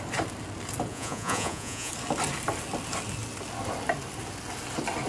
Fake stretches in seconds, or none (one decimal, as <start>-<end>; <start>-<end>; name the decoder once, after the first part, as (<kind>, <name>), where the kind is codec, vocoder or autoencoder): 0.9-1.9 (vocoder, Vocos)